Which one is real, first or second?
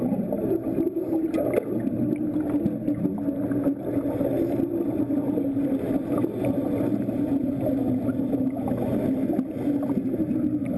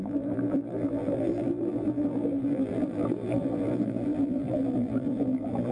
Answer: first